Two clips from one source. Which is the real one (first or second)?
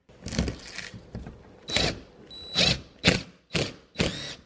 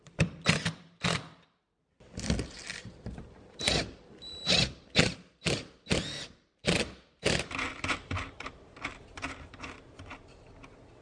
first